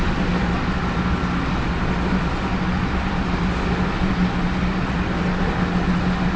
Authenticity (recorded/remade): recorded